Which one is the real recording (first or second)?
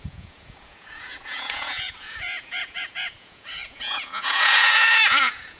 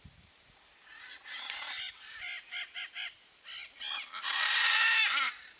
second